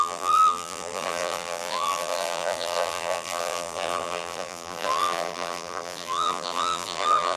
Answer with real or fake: fake